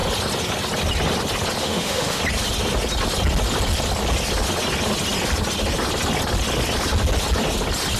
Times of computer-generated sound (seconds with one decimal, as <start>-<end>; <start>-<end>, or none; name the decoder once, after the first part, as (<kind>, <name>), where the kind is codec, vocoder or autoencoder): 1.6-2.2 (autoencoder, DAC-VAE)